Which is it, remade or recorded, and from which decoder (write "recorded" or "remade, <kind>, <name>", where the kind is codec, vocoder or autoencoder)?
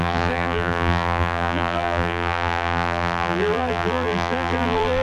remade, vocoder, BigVGAN v2